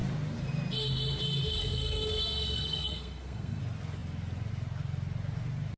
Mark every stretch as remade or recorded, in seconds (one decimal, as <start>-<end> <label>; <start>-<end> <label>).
0.0-1.6 recorded; 1.6-3.6 remade; 3.6-5.8 recorded

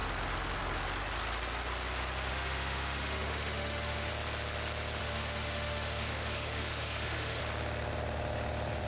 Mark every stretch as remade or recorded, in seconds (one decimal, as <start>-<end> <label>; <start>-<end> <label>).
0.0-2.3 recorded; 2.3-4.1 remade; 4.1-5.0 recorded; 5.0-7.4 remade; 7.4-8.9 recorded

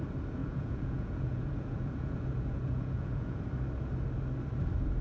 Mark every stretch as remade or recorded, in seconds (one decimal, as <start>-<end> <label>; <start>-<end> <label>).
0.0-0.4 recorded; 0.4-3.4 remade; 3.4-5.0 recorded

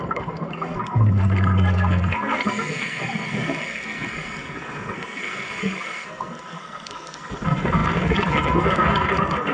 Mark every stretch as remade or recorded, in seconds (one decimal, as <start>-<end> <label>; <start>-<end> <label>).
0.0-9.5 remade

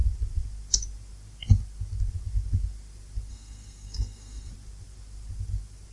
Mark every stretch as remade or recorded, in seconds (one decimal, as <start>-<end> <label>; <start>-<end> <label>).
0.0-3.3 recorded; 3.3-4.5 remade; 4.5-5.9 recorded

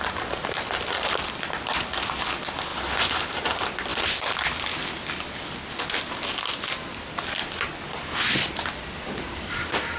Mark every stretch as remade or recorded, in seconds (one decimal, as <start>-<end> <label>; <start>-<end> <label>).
0.0-10.0 recorded